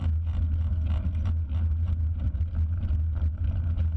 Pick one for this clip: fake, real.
real